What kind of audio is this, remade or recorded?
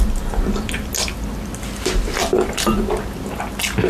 recorded